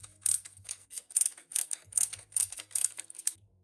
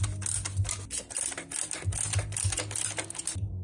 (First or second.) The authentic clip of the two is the second